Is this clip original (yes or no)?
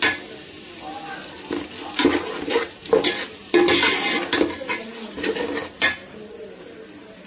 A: yes